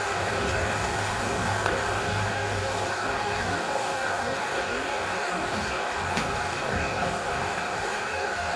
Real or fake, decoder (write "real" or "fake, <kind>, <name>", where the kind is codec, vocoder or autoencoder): fake, codec, DAC